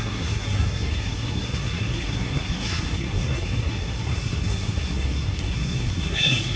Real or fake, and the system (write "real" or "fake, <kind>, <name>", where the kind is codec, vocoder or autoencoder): fake, codec, SNAC